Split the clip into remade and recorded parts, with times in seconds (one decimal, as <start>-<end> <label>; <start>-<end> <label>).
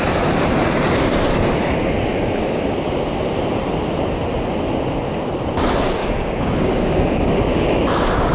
0.0-6.0 recorded; 6.0-8.3 remade